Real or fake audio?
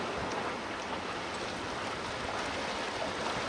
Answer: real